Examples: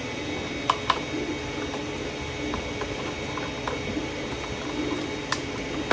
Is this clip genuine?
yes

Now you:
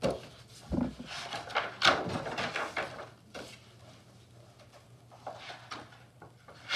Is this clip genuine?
yes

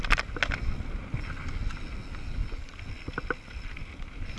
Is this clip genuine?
yes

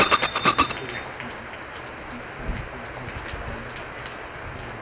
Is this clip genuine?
yes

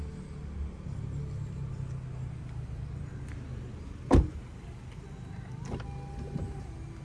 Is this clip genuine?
yes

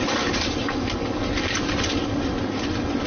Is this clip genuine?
yes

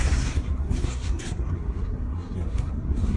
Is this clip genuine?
no